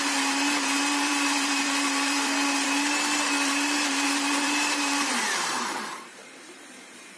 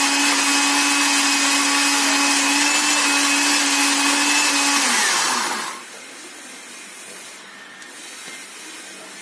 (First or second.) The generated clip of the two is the first